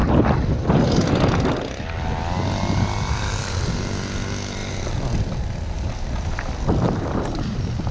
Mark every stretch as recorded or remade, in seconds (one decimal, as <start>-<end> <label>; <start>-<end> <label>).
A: 0.0-7.9 recorded